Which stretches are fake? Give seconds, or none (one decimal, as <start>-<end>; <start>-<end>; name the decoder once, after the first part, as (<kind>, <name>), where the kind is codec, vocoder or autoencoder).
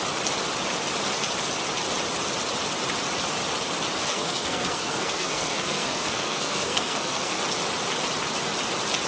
4.0-7.4 (codec, SNAC)